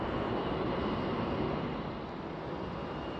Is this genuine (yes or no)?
no